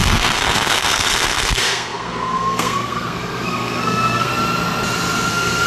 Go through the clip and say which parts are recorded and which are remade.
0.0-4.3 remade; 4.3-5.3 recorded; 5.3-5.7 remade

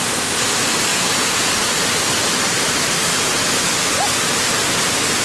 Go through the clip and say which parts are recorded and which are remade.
0.0-0.9 recorded; 0.9-1.5 remade; 1.5-5.2 recorded

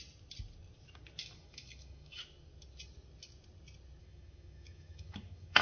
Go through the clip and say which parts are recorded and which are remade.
0.0-1.2 recorded; 1.2-2.2 remade; 2.2-4.0 recorded; 4.0-5.6 remade